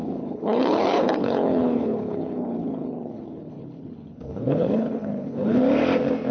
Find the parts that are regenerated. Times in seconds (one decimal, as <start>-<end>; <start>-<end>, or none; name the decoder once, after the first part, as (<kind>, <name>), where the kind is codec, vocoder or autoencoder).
0.0-5.6 (codec, HILCodec)